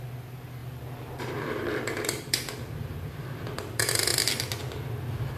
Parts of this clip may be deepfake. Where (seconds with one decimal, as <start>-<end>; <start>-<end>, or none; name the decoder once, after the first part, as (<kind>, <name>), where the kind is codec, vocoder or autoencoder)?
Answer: 0.0-4.1 (vocoder, BigVGAN v2); 4.6-5.4